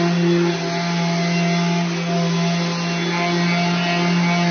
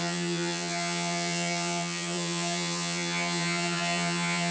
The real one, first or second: first